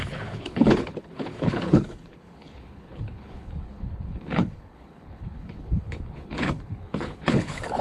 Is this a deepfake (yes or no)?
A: yes